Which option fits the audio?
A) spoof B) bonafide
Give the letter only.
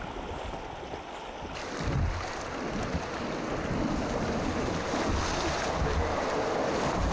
B